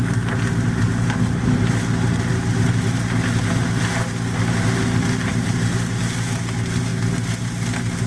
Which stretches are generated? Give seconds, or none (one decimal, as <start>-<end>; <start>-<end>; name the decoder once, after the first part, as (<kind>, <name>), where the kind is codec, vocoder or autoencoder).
5.3-6.0 (vocoder, BigVGAN v2)